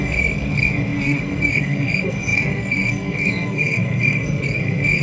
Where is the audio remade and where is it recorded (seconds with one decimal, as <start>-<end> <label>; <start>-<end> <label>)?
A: 0.0-5.0 remade